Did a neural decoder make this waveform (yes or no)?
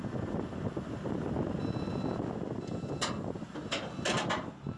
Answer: no